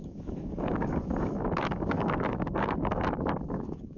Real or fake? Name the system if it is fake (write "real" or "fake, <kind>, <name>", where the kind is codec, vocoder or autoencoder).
fake, codec, DAC